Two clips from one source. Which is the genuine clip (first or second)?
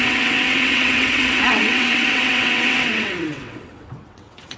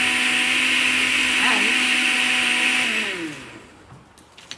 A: second